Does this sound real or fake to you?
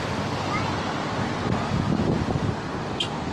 real